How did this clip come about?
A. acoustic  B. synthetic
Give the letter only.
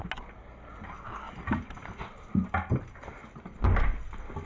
A